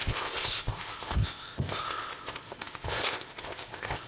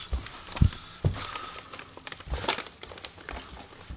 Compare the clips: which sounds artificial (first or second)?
first